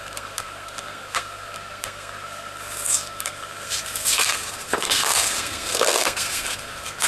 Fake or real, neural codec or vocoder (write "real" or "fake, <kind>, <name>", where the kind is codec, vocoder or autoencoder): fake, codec, SNAC